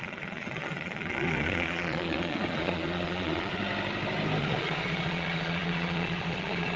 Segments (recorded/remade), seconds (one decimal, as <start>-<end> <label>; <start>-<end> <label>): 0.0-3.6 remade; 3.6-4.4 recorded; 4.4-6.8 remade